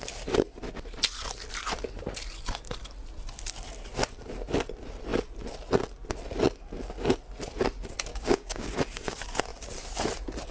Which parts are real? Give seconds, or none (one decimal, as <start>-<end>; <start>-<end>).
0.0-8.1; 8.7-10.5